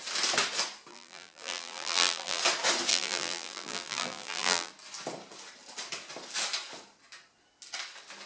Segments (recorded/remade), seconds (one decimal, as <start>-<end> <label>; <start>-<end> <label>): 0.0-0.9 recorded; 0.9-2.4 remade; 2.4-2.9 recorded; 2.9-4.7 remade; 4.7-8.3 recorded